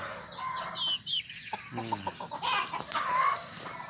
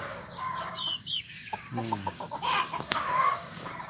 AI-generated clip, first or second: second